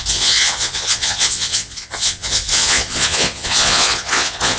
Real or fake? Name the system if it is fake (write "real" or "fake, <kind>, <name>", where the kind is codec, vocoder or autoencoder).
fake, vocoder, Vocos